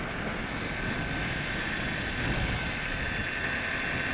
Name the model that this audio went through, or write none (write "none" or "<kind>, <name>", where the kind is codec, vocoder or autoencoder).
none